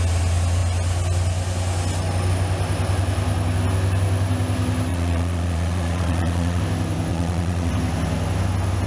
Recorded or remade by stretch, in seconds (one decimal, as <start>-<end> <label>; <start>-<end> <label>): 0.0-4.9 recorded; 4.9-6.6 remade; 6.6-7.1 recorded; 7.1-7.7 remade; 7.7-8.9 recorded